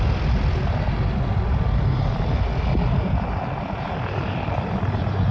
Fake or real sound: real